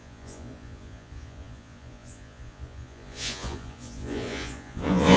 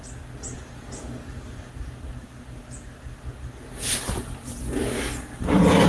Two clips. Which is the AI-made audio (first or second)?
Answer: first